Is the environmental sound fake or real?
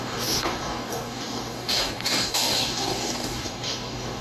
fake